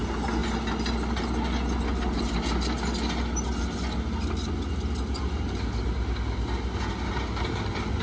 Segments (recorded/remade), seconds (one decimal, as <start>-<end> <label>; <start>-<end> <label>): 0.0-8.0 recorded